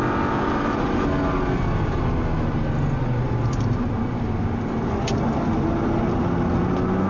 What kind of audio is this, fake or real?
real